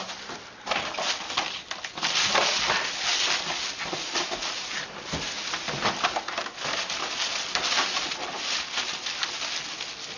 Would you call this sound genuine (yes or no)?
yes